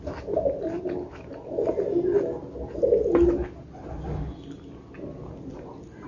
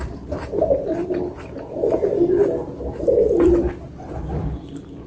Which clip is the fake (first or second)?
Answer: second